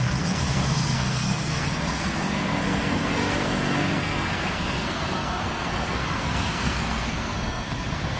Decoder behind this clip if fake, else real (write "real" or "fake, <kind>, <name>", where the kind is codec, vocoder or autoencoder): fake, codec, SNAC